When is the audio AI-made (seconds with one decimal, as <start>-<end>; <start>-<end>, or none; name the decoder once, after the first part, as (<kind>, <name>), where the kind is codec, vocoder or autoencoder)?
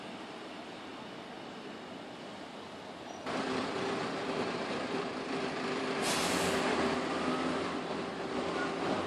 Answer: 0.0-0.9 (vocoder, BigVGAN v2); 3.4-9.1